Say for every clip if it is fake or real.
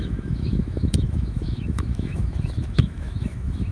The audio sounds fake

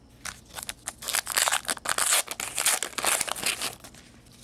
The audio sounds real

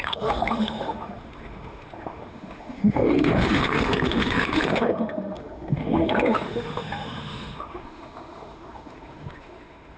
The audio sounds fake